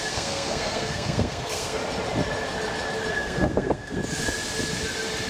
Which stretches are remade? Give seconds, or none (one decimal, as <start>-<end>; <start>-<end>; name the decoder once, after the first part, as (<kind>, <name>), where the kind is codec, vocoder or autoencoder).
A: 0.0-1.8 (codec, SNAC); 3.1-4.0